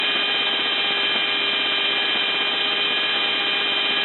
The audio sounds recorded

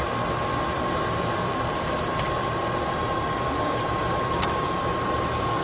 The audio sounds remade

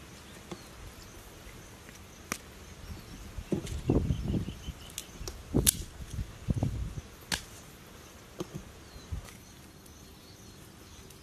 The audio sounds recorded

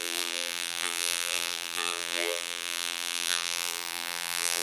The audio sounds remade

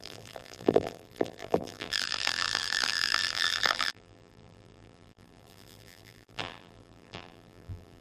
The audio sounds remade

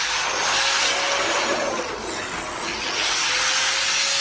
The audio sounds recorded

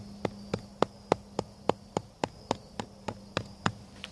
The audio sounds recorded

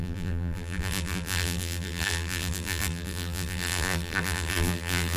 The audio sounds remade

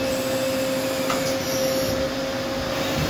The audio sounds recorded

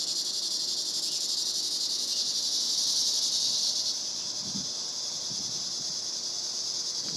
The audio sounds recorded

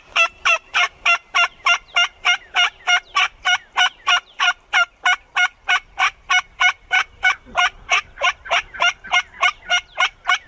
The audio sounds remade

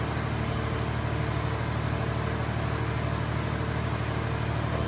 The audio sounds recorded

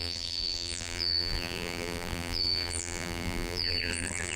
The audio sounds remade